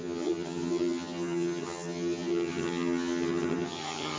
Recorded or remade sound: remade